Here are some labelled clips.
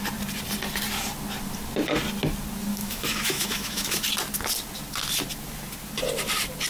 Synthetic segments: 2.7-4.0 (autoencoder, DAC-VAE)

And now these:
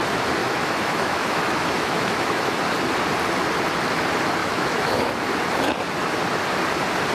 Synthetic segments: 0.4-2.6 (autoencoder, DAC-VAE); 4.4-5.1

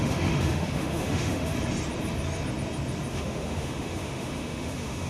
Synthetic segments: 0.0-1.5 (autoencoder, DAC-VAE); 3.1-5.1

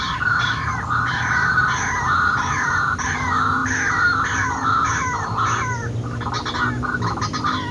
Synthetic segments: none